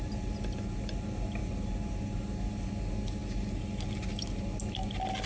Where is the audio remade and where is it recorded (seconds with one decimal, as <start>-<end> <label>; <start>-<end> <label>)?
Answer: 0.0-5.3 recorded